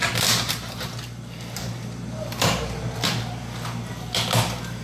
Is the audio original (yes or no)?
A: yes